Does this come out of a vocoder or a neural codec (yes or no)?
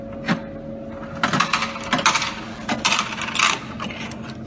no